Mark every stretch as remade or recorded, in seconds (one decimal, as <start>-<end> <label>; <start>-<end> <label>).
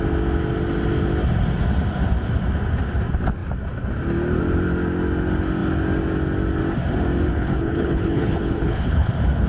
0.0-7.3 recorded; 7.3-9.1 remade; 9.1-9.5 recorded